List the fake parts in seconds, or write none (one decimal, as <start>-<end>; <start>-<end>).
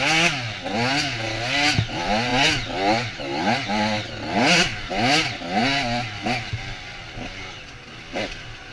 none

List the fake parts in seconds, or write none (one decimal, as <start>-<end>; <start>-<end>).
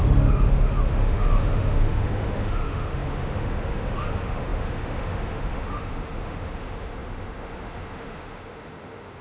0.0-9.2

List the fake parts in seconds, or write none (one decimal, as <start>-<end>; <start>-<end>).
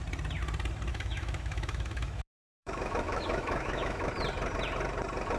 0.9-4.1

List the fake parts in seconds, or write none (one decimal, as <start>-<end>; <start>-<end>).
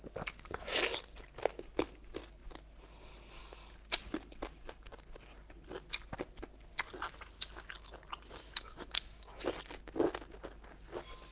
8.4-9.5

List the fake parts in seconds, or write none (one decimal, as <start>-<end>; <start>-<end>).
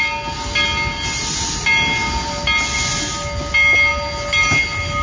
none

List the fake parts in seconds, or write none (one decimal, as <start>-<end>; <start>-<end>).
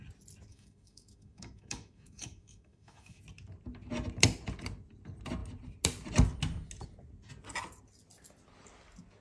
0.5-3.2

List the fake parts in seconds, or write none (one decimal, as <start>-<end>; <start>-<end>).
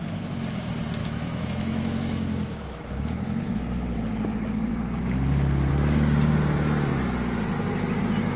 1.0-3.6